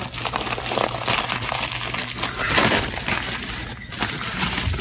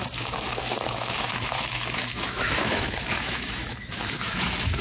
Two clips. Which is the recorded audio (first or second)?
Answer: first